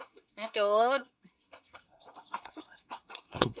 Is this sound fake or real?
fake